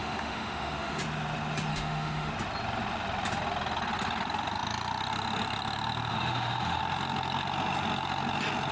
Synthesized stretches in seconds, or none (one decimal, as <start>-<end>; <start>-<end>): 0.0-1.0; 1.7-2.3; 6.1-6.8